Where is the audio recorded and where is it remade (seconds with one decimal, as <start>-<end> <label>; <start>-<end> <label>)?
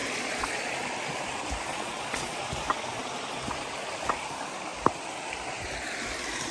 0.0-0.7 remade; 0.7-1.7 recorded; 1.7-2.4 remade; 2.4-6.5 recorded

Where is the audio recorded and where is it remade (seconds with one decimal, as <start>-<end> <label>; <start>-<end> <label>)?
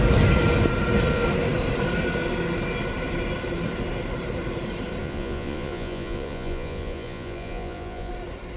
0.0-5.0 recorded; 5.0-8.1 remade; 8.1-8.6 recorded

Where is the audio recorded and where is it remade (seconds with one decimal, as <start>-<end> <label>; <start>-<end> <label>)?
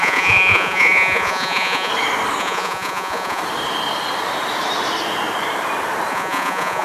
0.0-1.9 remade; 1.9-2.4 recorded; 2.4-3.4 remade; 3.4-6.1 recorded; 6.1-6.8 remade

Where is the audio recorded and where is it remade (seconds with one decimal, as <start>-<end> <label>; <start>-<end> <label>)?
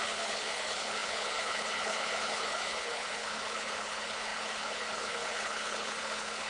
0.0-6.5 remade